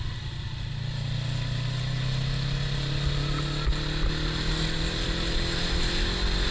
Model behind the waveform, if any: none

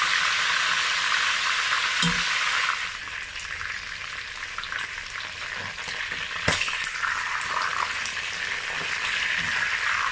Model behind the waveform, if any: none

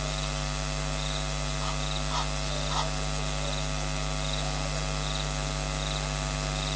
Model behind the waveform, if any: none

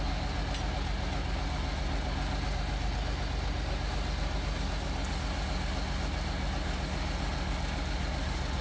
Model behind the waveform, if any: none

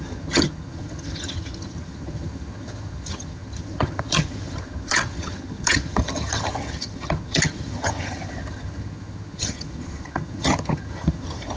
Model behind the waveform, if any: vocoder, HiFi-GAN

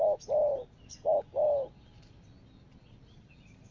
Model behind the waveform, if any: none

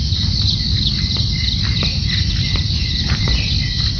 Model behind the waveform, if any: none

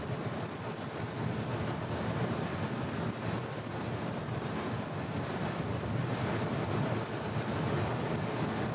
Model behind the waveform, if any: none